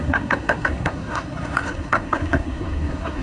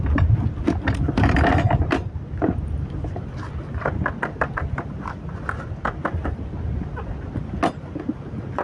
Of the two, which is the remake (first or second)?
first